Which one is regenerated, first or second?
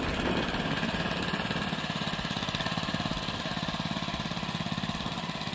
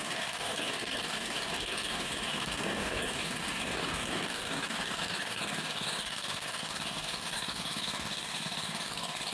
second